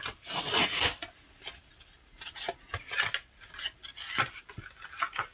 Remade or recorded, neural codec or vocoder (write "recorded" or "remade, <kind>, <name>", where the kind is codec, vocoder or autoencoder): recorded